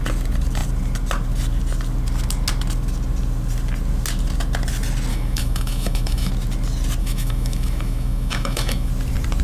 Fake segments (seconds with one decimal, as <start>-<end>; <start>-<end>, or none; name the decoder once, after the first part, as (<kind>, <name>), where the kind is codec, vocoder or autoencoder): 5.1-6.3 (autoencoder, DAC-VAE); 7.0-8.9

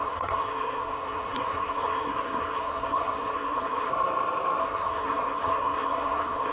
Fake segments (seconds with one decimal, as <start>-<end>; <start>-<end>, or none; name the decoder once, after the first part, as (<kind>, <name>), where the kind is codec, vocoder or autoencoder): 0.0-3.9 (codec, SNAC); 4.6-6.5